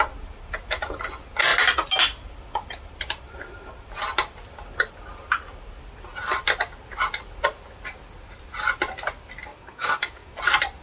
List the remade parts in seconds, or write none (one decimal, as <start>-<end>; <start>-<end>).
9.5-10.3